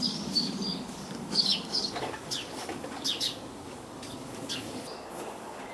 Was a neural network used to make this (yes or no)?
yes